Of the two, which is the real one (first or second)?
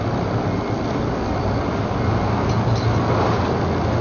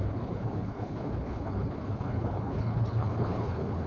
first